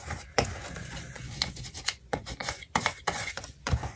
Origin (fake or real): fake